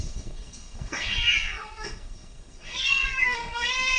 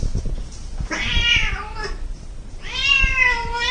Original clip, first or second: second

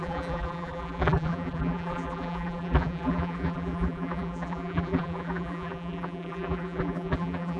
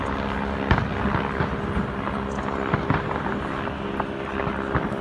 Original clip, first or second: second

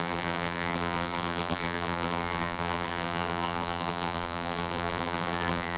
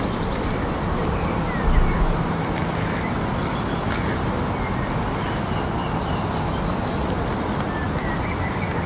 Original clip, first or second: second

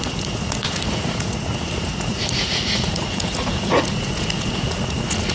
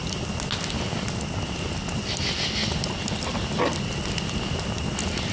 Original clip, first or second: second